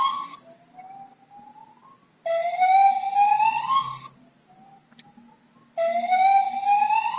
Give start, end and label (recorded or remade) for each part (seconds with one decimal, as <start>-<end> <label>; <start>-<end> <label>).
0.0-7.2 recorded